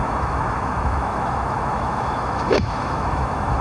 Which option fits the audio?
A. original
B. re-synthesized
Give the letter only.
B